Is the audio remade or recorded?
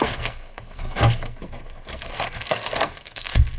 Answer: remade